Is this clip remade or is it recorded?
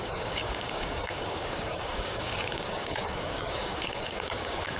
remade